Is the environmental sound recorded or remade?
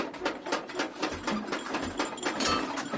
recorded